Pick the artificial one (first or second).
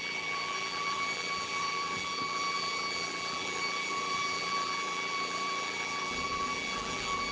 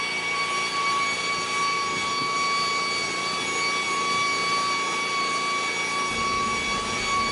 first